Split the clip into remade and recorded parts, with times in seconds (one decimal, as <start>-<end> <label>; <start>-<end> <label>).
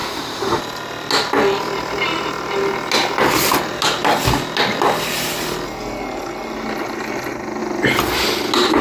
0.0-0.6 remade; 0.6-8.8 recorded